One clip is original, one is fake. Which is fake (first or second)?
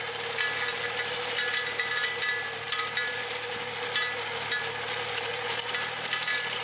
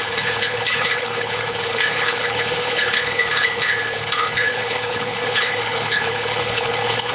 second